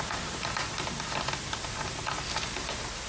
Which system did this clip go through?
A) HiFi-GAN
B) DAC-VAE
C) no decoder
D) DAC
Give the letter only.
C